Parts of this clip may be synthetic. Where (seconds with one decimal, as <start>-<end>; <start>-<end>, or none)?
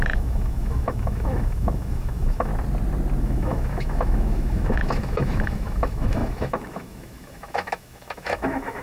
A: 0.0-2.5; 3.2-8.8